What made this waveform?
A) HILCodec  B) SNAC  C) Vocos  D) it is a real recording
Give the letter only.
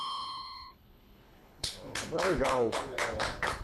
A